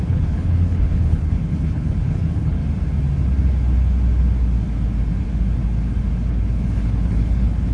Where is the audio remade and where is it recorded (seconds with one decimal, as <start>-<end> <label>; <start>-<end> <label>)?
0.0-2.6 remade; 2.6-6.3 recorded; 6.3-7.7 remade